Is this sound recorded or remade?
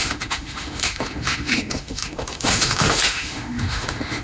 remade